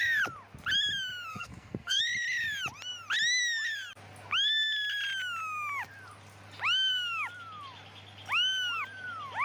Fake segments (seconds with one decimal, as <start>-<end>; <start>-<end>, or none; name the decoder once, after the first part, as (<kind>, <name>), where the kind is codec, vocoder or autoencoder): 1.3-2.0 (codec, SNAC)

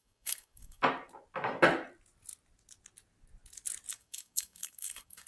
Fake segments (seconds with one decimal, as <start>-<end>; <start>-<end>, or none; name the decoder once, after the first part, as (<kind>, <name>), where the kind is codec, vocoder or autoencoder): 0.0-0.8 (codec, DAC); 3.9-5.3

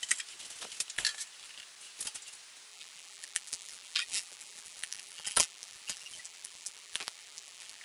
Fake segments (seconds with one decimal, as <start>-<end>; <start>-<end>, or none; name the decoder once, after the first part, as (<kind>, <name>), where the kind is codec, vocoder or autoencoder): 2.7-7.8 (vocoder, BigVGAN v2)